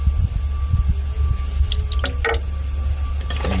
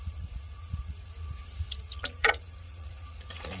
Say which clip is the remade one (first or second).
second